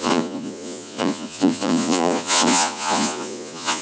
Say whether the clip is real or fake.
fake